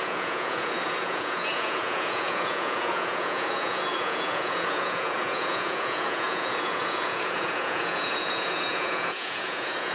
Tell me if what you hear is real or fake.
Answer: fake